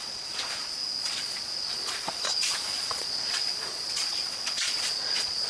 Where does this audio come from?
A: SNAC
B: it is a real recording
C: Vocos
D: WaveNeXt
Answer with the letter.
C